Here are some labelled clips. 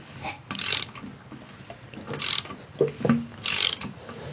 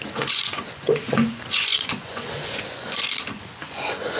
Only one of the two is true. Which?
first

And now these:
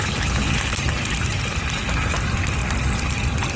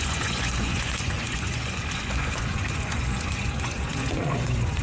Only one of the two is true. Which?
first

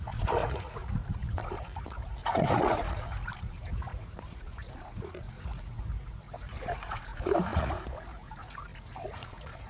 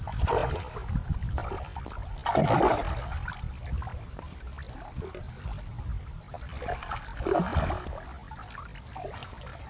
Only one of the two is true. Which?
second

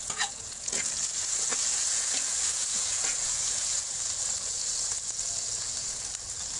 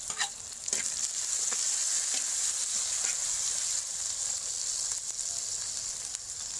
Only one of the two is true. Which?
second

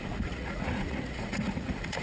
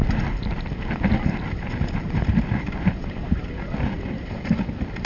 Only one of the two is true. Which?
second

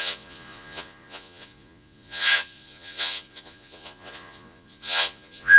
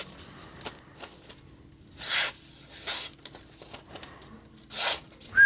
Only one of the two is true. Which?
second